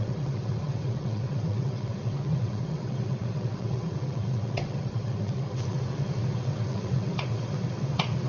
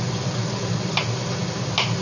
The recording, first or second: second